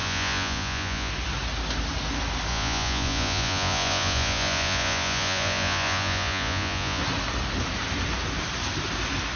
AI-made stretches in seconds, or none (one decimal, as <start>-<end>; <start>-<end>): 0.0-1.1; 2.5-7.0

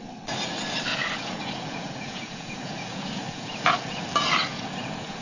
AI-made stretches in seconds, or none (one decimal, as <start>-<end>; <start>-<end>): 0.9-4.0; 4.4-5.2

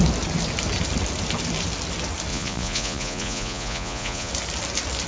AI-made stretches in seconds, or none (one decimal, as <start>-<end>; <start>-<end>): 2.3-4.3

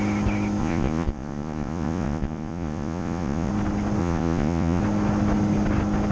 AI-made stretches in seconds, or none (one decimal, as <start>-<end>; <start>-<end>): 0.6-3.5; 4.0-4.8

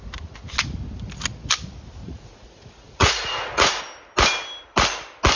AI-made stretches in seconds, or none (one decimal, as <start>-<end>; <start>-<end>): 2.0-3.8

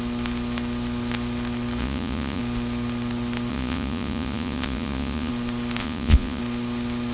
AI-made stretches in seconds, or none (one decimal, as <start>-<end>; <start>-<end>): 1.8-2.4; 3.5-5.3; 5.8-6.4

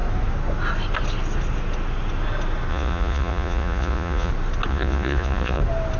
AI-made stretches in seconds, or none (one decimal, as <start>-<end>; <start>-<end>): 2.7-4.3; 4.7-5.6